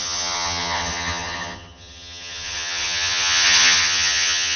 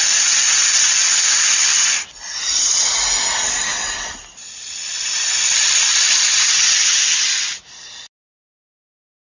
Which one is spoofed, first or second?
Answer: first